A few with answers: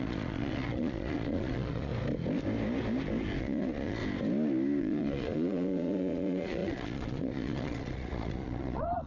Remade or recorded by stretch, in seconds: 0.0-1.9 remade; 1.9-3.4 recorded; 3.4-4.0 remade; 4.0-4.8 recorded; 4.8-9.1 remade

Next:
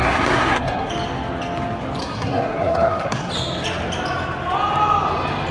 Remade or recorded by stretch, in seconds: 0.0-0.9 remade; 0.9-2.0 recorded; 2.0-3.3 remade; 3.3-5.5 recorded

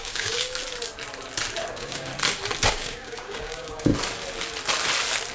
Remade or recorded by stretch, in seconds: 0.0-0.6 remade; 0.6-1.7 recorded; 1.7-2.1 remade; 2.1-2.7 recorded; 2.7-3.9 remade; 3.9-5.3 recorded